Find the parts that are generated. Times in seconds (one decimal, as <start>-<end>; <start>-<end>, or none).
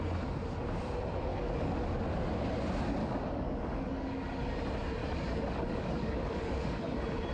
1.3-2.0; 3.0-4.4; 5.0-6.8